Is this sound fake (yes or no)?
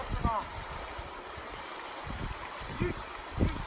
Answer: no